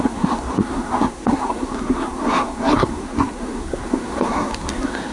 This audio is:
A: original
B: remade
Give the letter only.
B